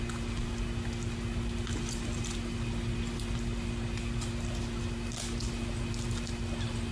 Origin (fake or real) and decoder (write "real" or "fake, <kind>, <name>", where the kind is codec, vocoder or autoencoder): real